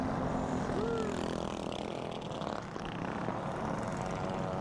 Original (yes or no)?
yes